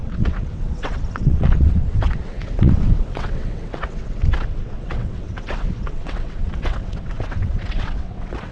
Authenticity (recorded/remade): remade